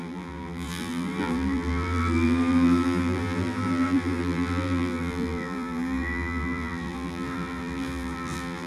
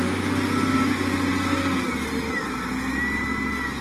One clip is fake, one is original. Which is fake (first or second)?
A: first